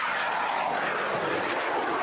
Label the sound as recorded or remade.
recorded